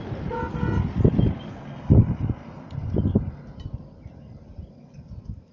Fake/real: real